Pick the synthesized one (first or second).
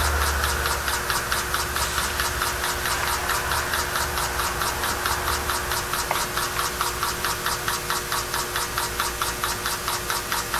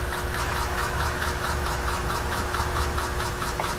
second